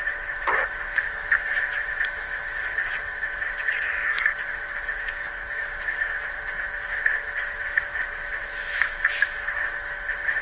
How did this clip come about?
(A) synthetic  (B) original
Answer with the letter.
A